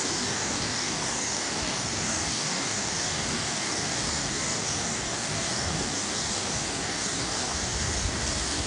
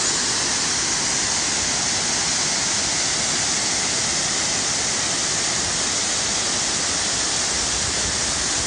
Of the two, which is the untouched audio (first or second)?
second